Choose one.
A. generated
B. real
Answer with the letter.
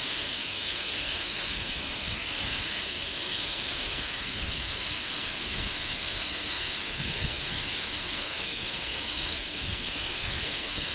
A